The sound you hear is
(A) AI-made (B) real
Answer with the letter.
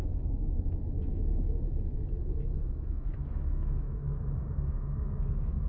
A